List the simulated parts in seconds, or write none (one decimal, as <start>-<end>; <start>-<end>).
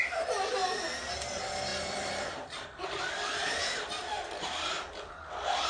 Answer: 1.7-5.1